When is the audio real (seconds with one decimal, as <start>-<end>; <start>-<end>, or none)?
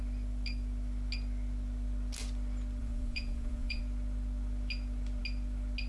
0.0-2.8; 3.8-5.9